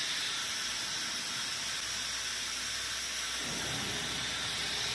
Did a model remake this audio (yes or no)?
no